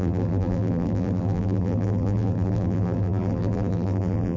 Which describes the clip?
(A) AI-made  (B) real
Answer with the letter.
A